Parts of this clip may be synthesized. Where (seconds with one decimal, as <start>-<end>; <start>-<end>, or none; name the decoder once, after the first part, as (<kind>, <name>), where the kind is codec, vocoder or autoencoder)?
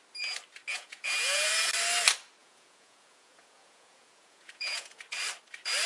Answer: 0.7-1.5 (vocoder, Vocos); 2.4-5.0